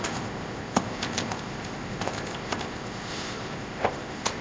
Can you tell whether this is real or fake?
fake